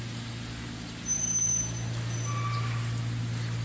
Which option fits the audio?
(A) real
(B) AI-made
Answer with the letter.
A